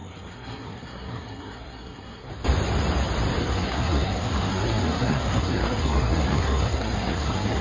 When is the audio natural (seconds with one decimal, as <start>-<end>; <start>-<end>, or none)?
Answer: 2.3-3.4